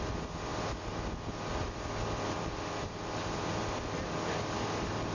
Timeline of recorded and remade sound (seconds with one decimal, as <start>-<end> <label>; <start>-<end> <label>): 0.0-5.1 recorded